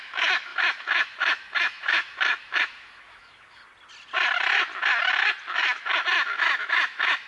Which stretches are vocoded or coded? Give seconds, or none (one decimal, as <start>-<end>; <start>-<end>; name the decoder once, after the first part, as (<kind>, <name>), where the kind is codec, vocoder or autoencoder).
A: 0.0-3.6 (autoencoder, DAC-VAE); 5.5-7.3

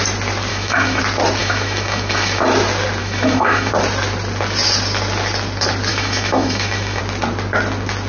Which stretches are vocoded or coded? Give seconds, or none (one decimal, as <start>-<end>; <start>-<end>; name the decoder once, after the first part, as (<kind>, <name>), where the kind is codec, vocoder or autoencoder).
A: 0.5-1.0 (autoencoder, DAC-VAE); 1.4-2.4; 3.0-3.7; 5.9-7.0

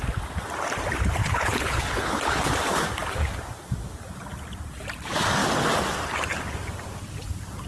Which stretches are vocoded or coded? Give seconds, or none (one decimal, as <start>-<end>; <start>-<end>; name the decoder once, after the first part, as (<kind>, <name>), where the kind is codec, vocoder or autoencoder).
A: 1.2-2.5 (codec, HILCodec)

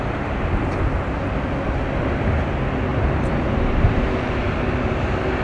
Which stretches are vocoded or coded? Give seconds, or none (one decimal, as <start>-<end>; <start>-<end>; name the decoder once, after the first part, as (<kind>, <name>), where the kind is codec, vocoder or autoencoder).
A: none

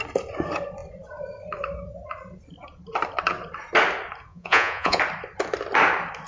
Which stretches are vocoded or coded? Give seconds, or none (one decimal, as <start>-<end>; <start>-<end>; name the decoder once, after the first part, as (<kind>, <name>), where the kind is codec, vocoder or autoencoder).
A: 4.3-5.0 (vocoder, Vocos)

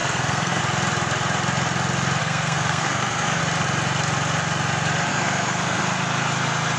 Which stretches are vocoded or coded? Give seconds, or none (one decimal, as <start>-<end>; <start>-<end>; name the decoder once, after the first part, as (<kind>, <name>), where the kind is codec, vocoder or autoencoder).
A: 0.0-0.6 (codec, SNAC); 2.2-3.4; 5.1-5.8

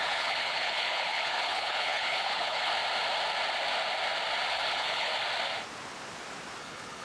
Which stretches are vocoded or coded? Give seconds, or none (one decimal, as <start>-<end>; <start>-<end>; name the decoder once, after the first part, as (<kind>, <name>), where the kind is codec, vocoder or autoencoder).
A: 0.0-2.7 (codec, HILCodec); 4.5-5.1; 6.6-7.0

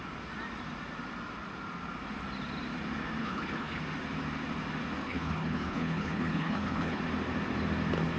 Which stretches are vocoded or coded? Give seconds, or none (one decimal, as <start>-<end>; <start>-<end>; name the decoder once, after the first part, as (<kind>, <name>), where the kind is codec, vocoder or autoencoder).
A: 3.2-3.8 (codec, HILCodec); 5.0-7.0